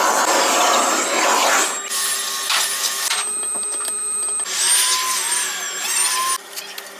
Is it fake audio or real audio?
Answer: real